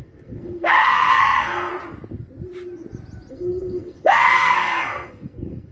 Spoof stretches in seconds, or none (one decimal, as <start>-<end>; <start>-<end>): 0.0-1.7; 3.3-5.7